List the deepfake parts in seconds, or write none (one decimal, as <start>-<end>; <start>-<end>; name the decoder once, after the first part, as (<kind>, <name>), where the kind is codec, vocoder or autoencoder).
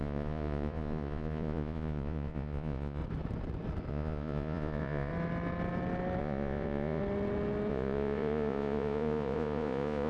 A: 0.0-3.0 (vocoder, Vocos); 3.9-5.1; 6.2-7.0; 7.7-10.1